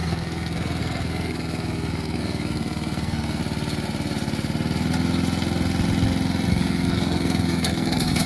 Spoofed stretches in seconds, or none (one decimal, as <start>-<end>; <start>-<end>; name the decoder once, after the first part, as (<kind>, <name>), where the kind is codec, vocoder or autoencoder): 0.0-3.4 (codec, SNAC); 6.5-8.3